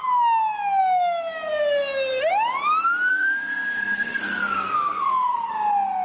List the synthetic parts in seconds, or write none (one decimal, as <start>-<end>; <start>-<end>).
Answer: 3.1-5.5